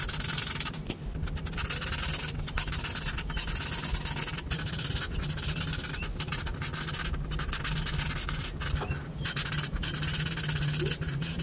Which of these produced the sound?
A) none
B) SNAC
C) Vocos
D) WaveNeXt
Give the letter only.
A